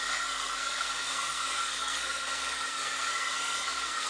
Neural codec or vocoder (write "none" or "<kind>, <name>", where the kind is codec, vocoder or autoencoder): codec, SNAC